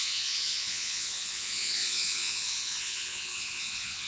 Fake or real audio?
fake